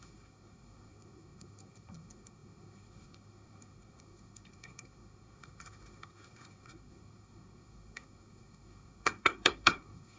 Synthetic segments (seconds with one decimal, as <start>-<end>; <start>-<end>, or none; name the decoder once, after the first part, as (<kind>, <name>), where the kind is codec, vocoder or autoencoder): 0.0-10.2 (codec, SNAC)